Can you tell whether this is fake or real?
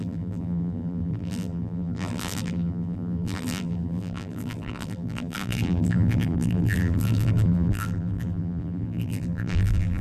fake